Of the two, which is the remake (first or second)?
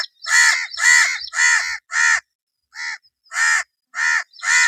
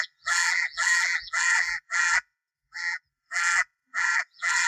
second